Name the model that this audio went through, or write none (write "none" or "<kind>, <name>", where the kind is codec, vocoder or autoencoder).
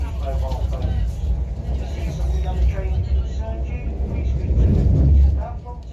none